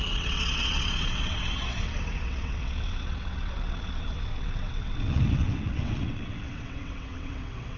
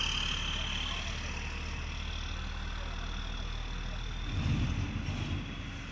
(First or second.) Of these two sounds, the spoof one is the first